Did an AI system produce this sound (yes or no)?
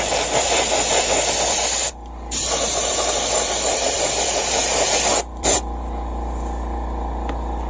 yes